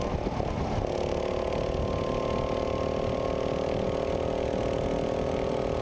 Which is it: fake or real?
real